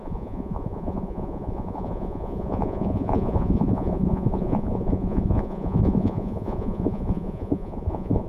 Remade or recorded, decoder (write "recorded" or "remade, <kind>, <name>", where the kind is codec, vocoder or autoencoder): remade, vocoder, Vocos